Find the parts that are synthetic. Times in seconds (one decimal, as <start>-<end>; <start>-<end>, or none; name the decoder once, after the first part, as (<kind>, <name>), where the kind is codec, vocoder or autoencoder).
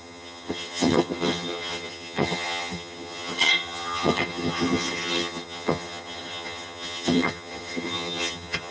0.0-8.7 (vocoder, HiFi-GAN)